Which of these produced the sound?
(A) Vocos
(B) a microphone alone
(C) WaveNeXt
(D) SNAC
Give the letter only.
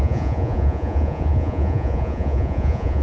A